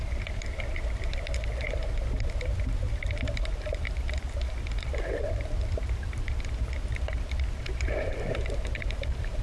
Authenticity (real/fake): fake